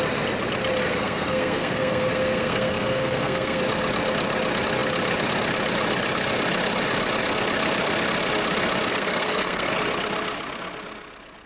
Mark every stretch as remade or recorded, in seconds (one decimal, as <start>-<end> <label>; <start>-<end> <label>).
0.0-0.8 recorded; 0.8-3.6 remade; 3.6-8.9 recorded; 8.9-9.7 remade; 9.7-11.5 recorded